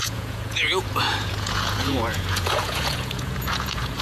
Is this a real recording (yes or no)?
no